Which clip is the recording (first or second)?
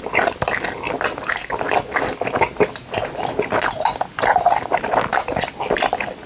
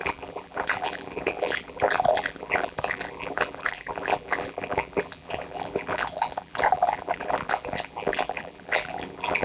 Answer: first